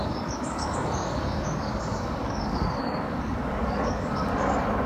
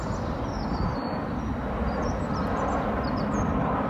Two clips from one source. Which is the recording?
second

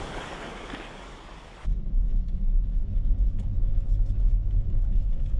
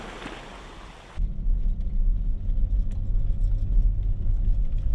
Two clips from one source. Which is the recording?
second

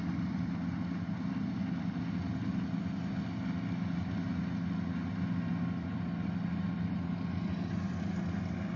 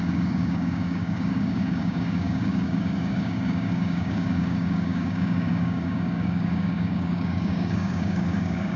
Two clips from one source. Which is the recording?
first